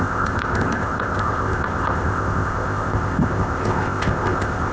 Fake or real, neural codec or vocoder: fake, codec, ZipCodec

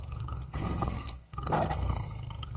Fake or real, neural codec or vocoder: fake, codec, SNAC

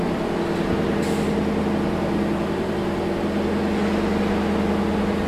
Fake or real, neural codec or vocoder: real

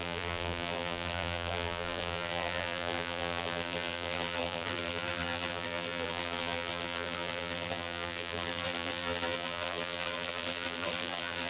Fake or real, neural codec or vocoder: fake, vocoder, BigVGAN v2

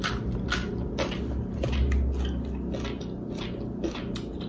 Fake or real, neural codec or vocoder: real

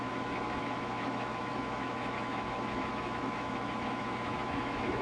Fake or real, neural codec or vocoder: fake, autoencoder, DAC-VAE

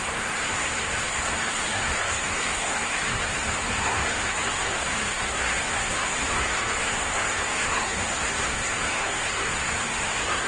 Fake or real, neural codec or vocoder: fake, codec, SNAC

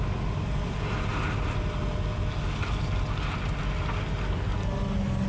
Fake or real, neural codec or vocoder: real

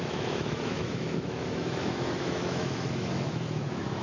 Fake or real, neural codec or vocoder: fake, autoencoder, DAC-VAE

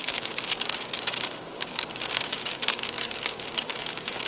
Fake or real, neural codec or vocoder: fake, codec, DAC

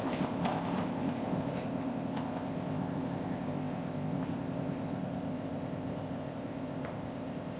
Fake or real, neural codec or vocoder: fake, codec, ZipCodec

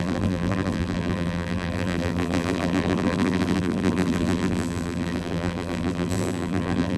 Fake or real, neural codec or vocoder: fake, vocoder, BigVGAN v2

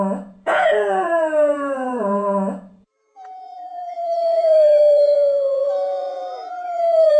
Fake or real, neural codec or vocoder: fake, vocoder, Vocos